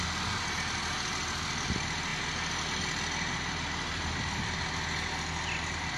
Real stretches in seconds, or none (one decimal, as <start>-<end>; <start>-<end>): 0.0-6.0